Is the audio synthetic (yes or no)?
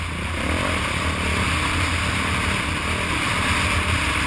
no